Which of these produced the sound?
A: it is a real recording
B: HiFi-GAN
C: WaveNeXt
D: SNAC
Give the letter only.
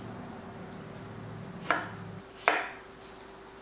A